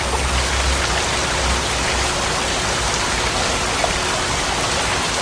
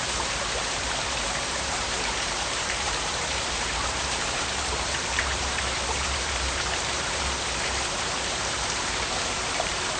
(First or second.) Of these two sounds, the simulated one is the second